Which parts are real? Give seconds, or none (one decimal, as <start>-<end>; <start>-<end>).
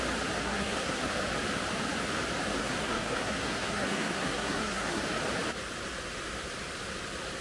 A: 0.0-0.4; 1.0-2.6; 5.0-7.4